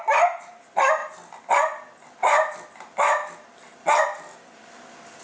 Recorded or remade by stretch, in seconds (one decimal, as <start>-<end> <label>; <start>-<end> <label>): 0.0-5.2 recorded